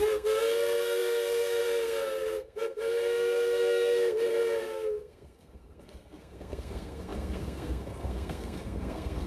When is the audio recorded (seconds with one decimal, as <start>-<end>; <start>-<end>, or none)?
none